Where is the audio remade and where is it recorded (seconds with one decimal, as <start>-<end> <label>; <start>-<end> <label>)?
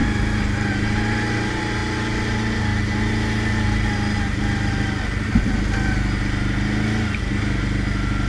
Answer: 0.0-8.3 recorded